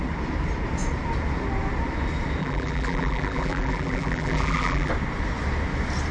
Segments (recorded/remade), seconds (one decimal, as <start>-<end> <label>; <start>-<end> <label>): 0.0-2.4 recorded; 2.4-4.9 remade; 4.9-6.1 recorded

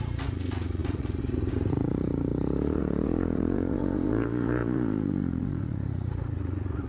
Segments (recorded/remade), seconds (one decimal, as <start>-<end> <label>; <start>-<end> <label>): 0.0-6.9 remade

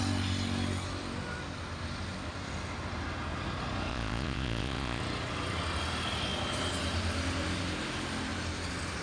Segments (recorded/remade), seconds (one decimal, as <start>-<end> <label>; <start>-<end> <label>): 0.0-3.9 recorded; 3.9-5.0 remade; 5.0-9.0 recorded